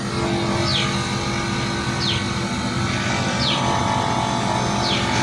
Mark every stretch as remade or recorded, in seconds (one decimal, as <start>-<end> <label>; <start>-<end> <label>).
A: 0.0-5.2 recorded